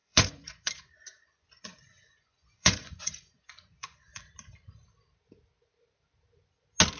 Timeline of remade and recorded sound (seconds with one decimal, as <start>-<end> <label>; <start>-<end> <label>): 0.0-4.2 remade; 4.2-7.0 recorded